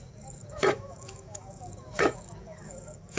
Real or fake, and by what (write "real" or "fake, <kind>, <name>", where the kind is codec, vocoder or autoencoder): fake, codec, DAC